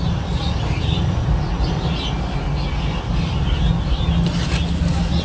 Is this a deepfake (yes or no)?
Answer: no